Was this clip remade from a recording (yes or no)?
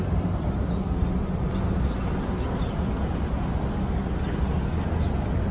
no